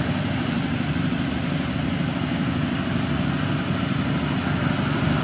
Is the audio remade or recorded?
recorded